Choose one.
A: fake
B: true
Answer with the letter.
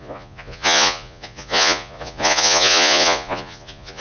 A